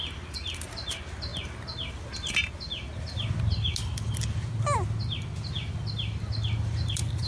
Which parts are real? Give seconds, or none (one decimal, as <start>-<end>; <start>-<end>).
0.0-7.3